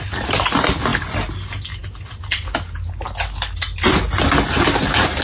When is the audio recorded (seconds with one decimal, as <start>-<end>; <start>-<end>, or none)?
0.0-5.2